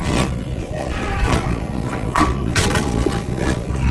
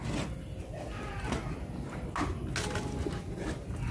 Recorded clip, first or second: second